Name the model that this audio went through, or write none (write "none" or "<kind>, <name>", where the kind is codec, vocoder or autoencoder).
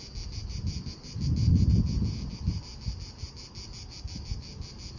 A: none